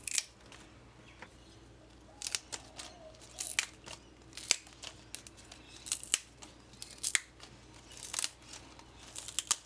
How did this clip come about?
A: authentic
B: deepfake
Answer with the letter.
A